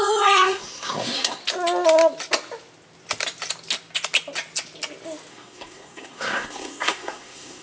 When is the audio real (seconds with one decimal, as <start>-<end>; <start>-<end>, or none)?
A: 1.4-5.3